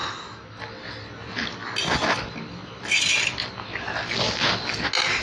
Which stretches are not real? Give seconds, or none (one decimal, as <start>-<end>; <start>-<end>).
0.0-0.6